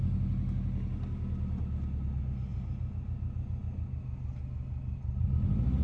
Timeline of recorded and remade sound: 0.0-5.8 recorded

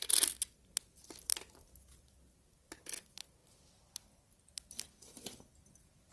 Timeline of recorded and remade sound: 0.0-6.1 recorded